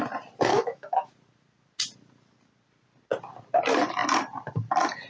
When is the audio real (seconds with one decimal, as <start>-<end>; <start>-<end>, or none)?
0.0-0.5; 1.1-5.1